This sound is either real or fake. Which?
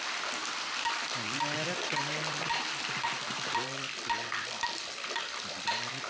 fake